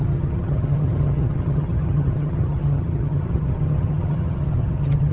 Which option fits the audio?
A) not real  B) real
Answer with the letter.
A